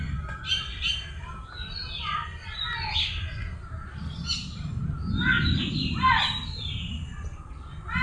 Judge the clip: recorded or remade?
recorded